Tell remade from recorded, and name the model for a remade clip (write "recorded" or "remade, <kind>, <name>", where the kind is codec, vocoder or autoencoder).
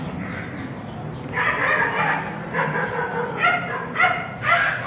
recorded